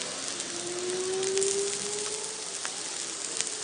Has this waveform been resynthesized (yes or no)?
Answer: no